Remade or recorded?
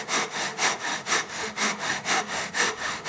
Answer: remade